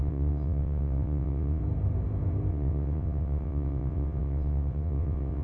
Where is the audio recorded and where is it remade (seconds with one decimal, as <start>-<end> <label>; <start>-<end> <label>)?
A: 0.0-1.6 remade; 1.6-2.5 recorded; 2.5-5.4 remade